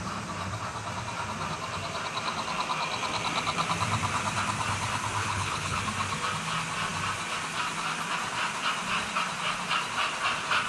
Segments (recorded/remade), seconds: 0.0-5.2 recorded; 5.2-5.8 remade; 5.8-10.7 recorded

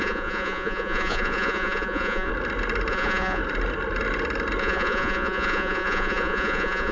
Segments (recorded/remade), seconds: 0.0-2.3 remade; 2.3-2.9 recorded; 2.9-3.4 remade; 3.4-4.6 recorded; 4.6-6.9 remade

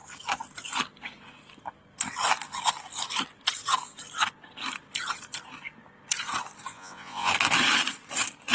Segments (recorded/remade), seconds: 0.0-6.7 recorded; 6.7-7.3 remade; 7.3-8.5 recorded

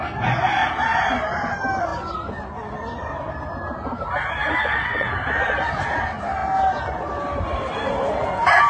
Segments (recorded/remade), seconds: 0.0-4.6 recorded; 4.6-5.1 remade; 5.1-8.7 recorded